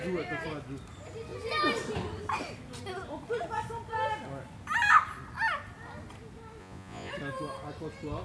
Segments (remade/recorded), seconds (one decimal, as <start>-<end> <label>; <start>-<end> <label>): 0.0-6.6 recorded; 6.6-7.1 remade; 7.1-8.2 recorded